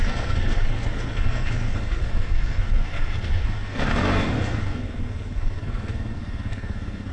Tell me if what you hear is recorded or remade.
remade